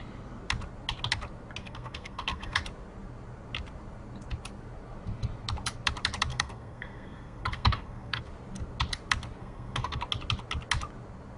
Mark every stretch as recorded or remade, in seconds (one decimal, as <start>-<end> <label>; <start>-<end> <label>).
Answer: 0.0-1.6 recorded; 1.6-2.6 remade; 2.6-6.3 recorded; 6.3-8.2 remade; 8.2-9.4 recorded; 9.4-10.0 remade; 10.0-11.4 recorded